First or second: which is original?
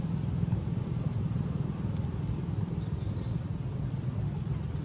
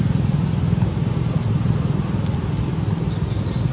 second